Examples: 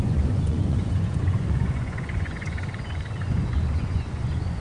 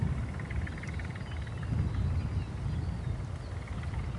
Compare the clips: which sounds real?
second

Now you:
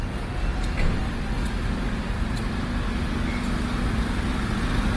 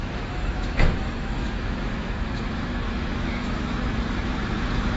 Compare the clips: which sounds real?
first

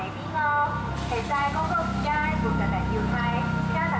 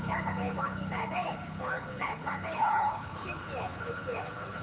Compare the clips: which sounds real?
first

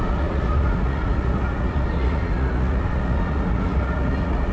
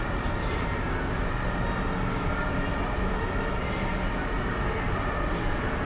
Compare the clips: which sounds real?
second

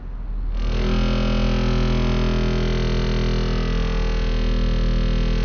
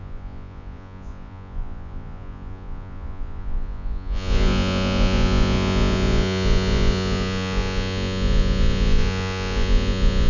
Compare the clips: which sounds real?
first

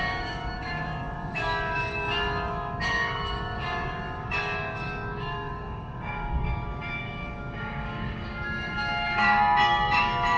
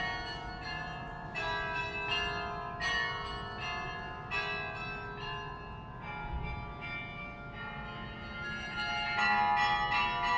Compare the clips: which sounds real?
second